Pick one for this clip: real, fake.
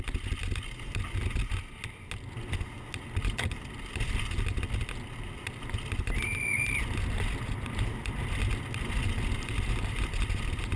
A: real